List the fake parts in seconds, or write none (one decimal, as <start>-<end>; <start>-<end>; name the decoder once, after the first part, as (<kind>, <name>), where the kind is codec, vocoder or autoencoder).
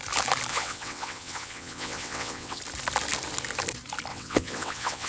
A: 0.5-2.6 (vocoder, WaveNeXt); 4.1-5.1